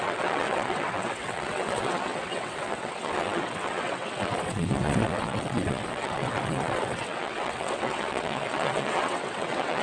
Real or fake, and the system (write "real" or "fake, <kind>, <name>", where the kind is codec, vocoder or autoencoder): fake, vocoder, WaveNeXt